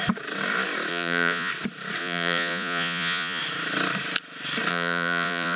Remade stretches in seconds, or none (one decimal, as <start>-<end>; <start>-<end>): 0.9-1.5; 2.0-3.4; 4.7-5.6